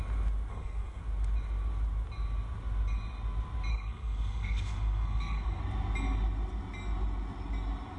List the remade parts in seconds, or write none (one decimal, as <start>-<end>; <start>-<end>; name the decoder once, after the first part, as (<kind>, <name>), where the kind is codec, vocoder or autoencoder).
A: 0.5-1.0 (codec, SNAC); 3.7-5.6